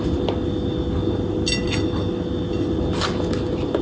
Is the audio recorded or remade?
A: recorded